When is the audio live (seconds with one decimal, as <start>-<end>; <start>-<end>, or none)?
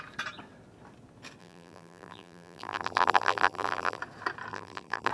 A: 0.0-1.4; 4.0-4.5